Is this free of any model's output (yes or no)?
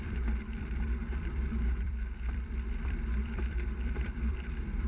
no